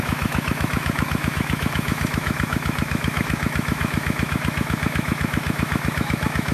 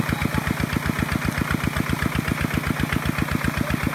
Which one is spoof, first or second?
first